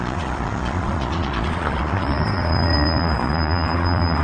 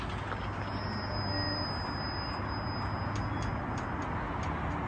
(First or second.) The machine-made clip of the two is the first